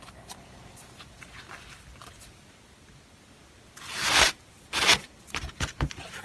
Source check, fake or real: real